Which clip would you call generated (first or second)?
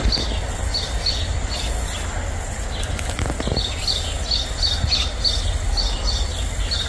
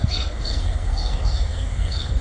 second